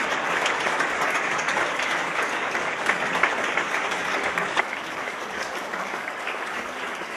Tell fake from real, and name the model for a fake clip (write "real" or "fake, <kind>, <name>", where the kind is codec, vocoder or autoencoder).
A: fake, codec, DAC